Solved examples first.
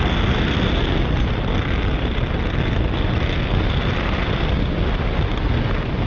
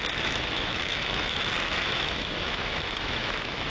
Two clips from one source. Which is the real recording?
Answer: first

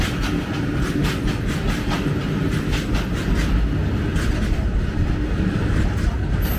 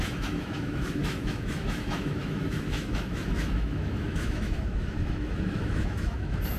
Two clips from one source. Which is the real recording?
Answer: first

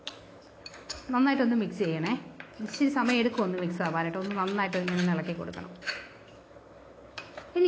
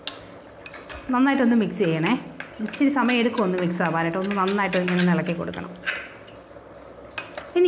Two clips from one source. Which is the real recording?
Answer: second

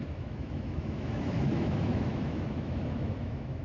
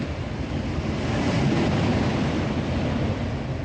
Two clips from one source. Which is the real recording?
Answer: second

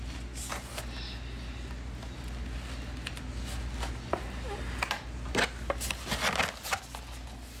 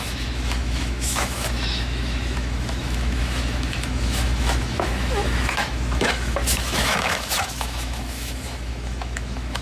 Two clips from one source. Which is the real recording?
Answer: first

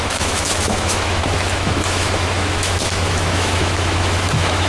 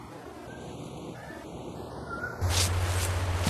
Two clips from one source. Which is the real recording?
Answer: second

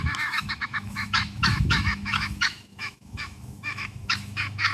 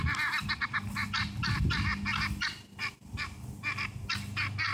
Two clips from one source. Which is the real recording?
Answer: second